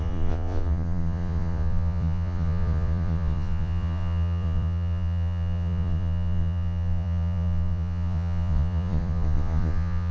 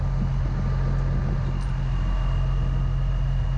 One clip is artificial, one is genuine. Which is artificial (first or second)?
first